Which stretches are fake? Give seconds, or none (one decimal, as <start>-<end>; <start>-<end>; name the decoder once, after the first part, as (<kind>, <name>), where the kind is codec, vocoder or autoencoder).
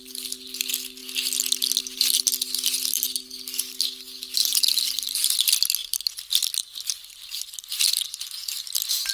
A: none